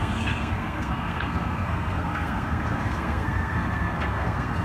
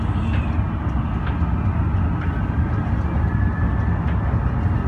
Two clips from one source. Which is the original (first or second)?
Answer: second